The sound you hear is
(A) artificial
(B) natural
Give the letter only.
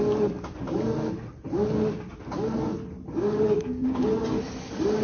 B